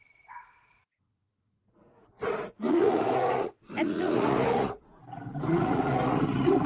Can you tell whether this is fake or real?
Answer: fake